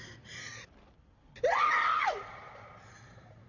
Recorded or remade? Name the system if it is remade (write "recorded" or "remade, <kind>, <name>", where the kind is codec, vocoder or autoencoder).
remade, vocoder, BigVGAN v2